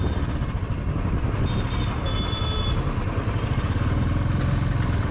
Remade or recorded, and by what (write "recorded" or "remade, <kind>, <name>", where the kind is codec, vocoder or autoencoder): recorded